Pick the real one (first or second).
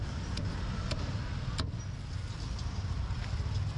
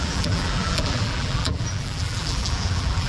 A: first